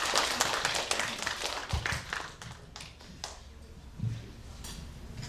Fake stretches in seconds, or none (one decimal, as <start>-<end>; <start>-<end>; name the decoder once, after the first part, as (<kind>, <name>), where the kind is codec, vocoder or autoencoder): none